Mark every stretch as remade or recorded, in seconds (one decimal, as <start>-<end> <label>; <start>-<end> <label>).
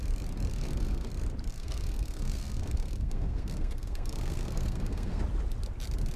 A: 0.0-0.5 recorded; 0.5-1.1 remade; 1.1-1.5 recorded; 1.5-5.2 remade; 5.2-6.2 recorded